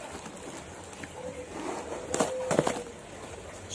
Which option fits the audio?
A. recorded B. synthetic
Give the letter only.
A